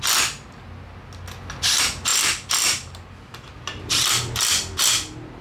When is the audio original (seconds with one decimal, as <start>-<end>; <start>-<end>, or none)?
0.0-2.1; 4.8-5.4